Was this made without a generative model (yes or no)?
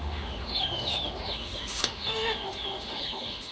no